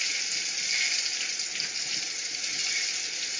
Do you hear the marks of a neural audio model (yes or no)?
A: no